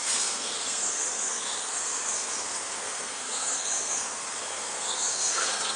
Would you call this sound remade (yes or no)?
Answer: yes